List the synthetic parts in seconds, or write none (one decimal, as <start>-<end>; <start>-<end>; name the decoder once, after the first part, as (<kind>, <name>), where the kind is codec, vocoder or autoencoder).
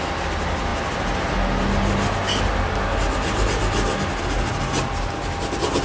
none